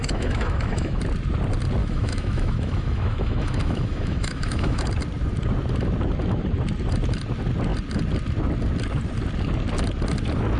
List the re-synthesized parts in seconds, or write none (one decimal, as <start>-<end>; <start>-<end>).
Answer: 0.0-1.0; 1.8-4.8